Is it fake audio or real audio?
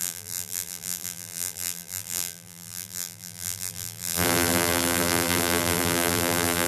fake